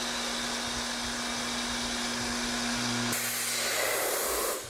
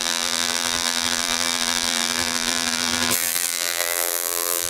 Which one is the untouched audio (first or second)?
first